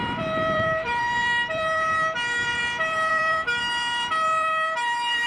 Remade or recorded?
remade